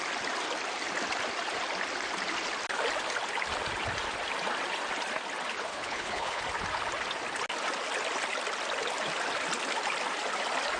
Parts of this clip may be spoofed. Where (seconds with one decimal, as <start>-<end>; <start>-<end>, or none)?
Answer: 5.7-6.4